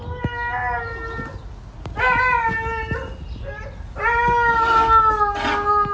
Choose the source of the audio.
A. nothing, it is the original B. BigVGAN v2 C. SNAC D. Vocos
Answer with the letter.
A